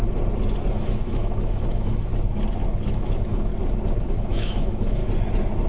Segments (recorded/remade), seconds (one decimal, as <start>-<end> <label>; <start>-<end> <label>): 0.0-0.7 recorded; 0.7-2.1 remade; 2.1-2.9 recorded; 2.9-3.5 remade; 3.5-4.1 recorded; 4.1-5.0 remade; 5.0-5.7 recorded

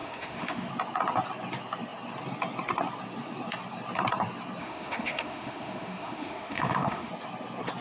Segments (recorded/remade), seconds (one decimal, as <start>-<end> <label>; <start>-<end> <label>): 0.0-0.7 remade; 0.7-4.6 recorded; 4.6-7.1 remade; 7.1-7.8 recorded

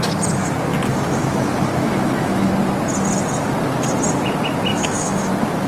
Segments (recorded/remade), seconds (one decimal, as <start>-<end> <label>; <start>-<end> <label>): 0.0-0.9 recorded; 0.9-2.5 remade; 2.5-4.7 recorded; 4.7-5.3 remade; 5.3-5.7 recorded

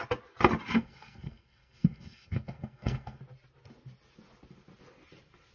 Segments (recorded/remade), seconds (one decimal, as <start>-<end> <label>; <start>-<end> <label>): 0.0-0.7 recorded; 0.7-3.2 remade; 3.2-5.5 recorded

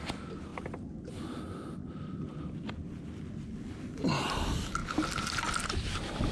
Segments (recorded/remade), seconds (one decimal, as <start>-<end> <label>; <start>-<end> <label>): 0.0-4.8 recorded; 4.8-5.6 remade; 5.6-6.3 recorded

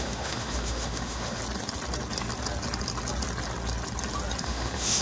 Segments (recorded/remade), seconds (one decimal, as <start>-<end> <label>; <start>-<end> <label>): 0.0-1.4 remade; 1.4-4.4 recorded; 4.4-5.0 remade

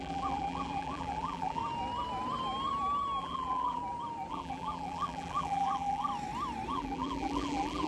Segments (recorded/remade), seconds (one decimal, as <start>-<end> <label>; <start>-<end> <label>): 0.0-1.6 remade; 1.6-3.2 recorded; 3.2-3.8 remade; 3.8-4.3 recorded; 4.3-6.1 remade; 6.1-6.7 recorded; 6.7-7.9 remade